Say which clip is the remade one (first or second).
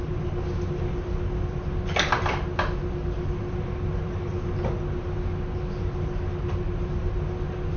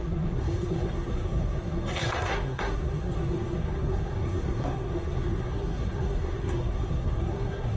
second